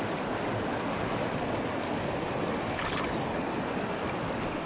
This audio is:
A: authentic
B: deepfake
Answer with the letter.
A